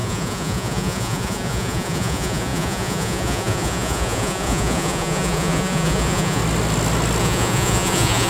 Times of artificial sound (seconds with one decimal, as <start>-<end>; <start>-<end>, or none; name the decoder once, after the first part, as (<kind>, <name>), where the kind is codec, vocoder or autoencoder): 0.0-6.4 (vocoder, Vocos); 7.2-8.3